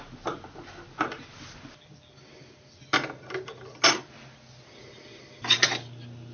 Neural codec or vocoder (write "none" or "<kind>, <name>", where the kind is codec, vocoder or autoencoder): none